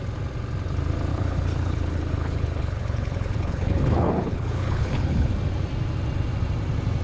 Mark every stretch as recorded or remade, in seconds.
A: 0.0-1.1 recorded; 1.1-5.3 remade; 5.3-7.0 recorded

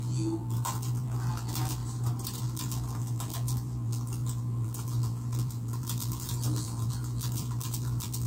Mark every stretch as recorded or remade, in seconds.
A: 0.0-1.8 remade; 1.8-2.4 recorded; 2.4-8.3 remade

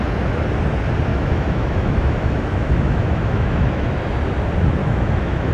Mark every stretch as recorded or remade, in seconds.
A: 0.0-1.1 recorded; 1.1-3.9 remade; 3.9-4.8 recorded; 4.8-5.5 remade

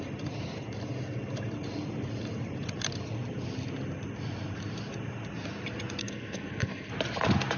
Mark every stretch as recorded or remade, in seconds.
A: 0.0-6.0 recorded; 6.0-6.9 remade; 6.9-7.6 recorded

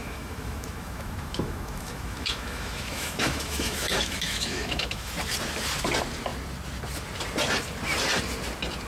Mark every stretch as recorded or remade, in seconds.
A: 0.0-5.1 remade; 5.1-8.9 recorded

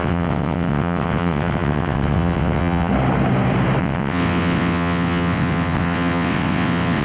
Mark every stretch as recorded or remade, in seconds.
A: 0.0-2.9 remade; 2.9-3.8 recorded; 3.8-7.0 remade

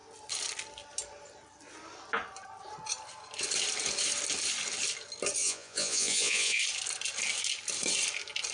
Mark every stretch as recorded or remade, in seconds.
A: 0.0-5.4 recorded; 5.4-6.6 remade; 6.6-8.5 recorded

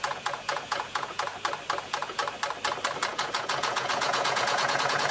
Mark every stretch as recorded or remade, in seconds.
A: 0.0-1.3 remade; 1.3-1.8 recorded; 1.8-2.2 remade; 2.2-3.1 recorded; 3.1-5.1 remade